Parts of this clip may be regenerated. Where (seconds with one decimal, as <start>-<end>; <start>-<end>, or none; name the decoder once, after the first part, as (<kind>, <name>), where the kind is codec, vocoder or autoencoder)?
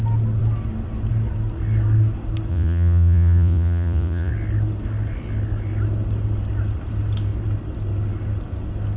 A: 2.5-4.3 (vocoder, Vocos)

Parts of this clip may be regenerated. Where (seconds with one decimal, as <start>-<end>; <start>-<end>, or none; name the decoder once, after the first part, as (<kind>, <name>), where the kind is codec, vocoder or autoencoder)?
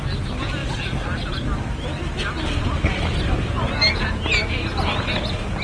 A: none